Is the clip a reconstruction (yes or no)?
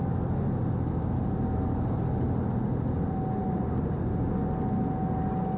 no